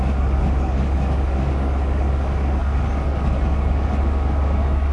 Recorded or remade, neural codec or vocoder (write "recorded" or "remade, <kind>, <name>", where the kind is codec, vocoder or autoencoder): remade, codec, DAC